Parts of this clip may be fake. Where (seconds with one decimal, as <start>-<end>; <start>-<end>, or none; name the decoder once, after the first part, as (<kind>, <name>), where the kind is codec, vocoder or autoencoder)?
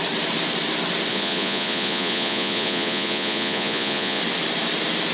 1.1-4.2 (vocoder, Vocos)